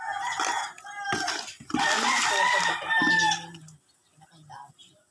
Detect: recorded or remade recorded